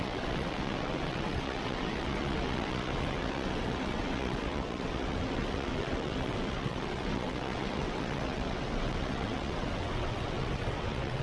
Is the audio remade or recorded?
remade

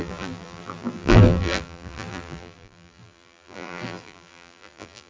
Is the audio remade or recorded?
remade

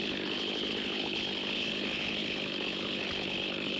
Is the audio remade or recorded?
remade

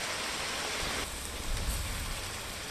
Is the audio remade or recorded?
recorded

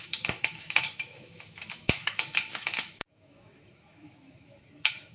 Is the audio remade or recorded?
remade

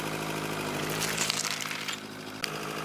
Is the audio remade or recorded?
recorded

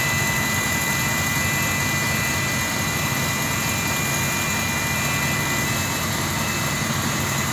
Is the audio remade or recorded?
recorded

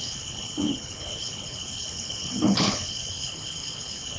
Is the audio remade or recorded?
remade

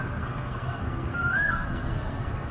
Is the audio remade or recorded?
remade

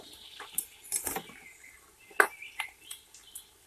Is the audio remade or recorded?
recorded